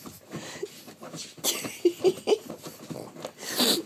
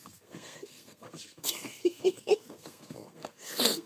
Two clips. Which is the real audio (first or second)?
first